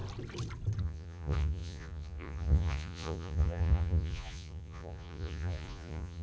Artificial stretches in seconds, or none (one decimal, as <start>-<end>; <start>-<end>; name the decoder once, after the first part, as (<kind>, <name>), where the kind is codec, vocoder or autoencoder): 0.8-6.2 (vocoder, Vocos)

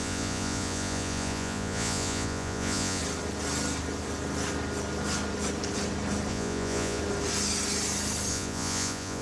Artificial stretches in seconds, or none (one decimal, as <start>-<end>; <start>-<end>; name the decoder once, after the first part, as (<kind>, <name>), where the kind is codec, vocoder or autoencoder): 0.0-3.0 (vocoder, Vocos); 6.3-7.0; 8.3-9.2

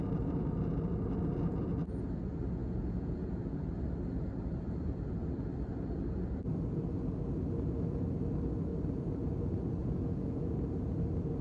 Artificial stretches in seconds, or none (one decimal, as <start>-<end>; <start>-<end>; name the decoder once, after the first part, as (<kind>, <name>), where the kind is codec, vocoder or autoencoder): 2.6-3.7 (vocoder, Vocos); 9.8-10.5

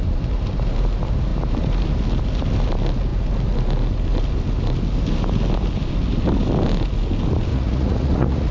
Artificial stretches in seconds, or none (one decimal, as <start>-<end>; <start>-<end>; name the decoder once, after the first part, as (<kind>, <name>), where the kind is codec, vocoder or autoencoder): 7.5-8.5 (vocoder, Vocos)

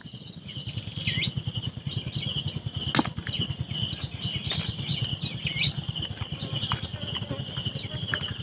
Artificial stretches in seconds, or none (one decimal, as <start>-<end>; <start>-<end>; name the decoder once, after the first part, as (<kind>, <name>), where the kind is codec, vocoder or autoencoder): none

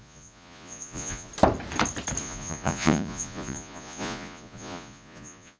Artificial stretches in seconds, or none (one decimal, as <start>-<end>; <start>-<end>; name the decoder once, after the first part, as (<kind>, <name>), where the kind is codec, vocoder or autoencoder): 0.0-1.3 (vocoder, Vocos); 2.2-5.6

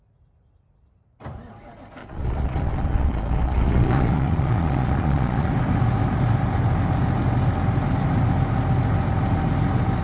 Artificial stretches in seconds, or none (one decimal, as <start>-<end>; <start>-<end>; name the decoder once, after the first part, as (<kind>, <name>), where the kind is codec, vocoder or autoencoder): 2.0-5.5 (vocoder, Vocos)